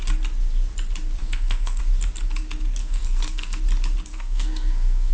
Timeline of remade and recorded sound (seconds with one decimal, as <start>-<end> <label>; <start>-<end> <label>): 0.0-1.2 recorded; 1.2-1.8 remade; 1.8-2.8 recorded; 2.8-3.6 remade; 3.6-4.1 recorded; 4.1-5.1 remade